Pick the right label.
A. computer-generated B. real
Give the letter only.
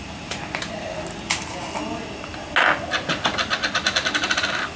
B